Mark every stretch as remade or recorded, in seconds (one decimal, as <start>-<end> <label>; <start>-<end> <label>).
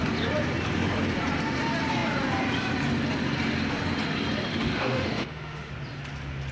0.0-4.5 recorded; 4.5-5.7 remade; 5.7-6.5 recorded